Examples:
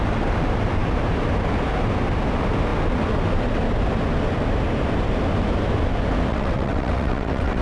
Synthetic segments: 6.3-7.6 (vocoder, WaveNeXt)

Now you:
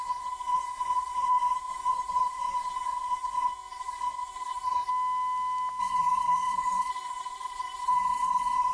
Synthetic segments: 0.0-4.9 (codec, SNAC); 5.8-8.7